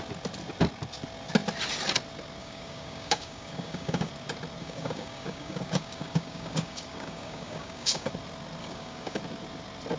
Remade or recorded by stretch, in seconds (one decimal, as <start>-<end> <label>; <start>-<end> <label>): 0.0-2.4 recorded; 2.4-4.1 remade; 4.1-4.6 recorded; 4.6-8.1 remade; 8.1-8.6 recorded; 8.6-9.2 remade; 9.2-10.0 recorded